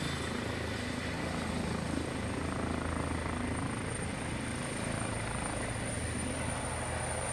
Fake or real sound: real